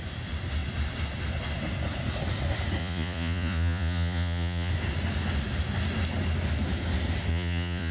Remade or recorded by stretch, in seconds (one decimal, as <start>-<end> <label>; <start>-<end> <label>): 0.0-2.8 recorded; 2.8-4.7 remade; 4.7-7.3 recorded; 7.3-7.9 remade